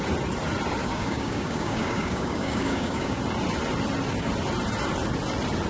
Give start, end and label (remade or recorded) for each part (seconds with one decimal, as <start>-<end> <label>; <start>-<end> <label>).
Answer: 0.0-0.8 recorded; 0.8-3.2 remade; 3.2-5.7 recorded